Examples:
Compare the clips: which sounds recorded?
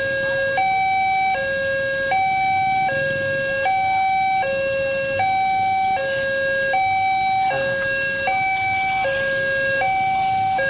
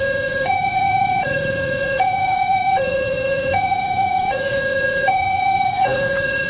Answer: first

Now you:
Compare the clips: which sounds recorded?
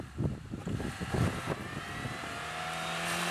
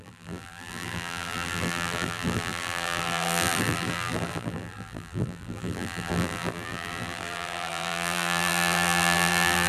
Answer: first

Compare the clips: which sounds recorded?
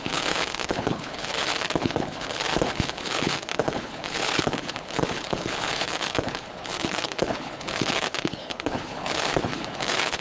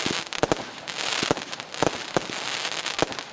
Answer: second